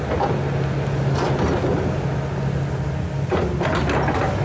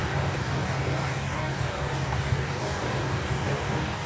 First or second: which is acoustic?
first